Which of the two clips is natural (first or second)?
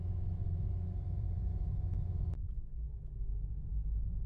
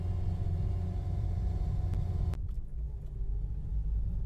second